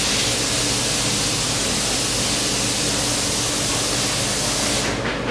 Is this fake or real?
real